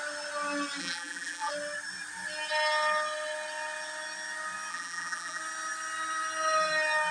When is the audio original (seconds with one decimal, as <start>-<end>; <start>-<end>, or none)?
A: 0.0-0.8; 1.5-4.7; 5.4-7.1